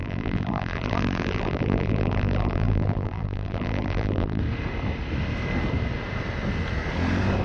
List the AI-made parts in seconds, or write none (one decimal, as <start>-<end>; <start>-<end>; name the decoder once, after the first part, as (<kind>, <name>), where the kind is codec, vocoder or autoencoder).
0.0-4.4 (vocoder, BigVGAN v2)